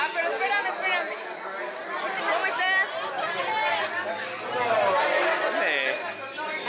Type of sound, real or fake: real